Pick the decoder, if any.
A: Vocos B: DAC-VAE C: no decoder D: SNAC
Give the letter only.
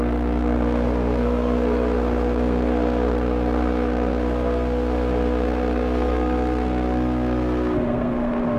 D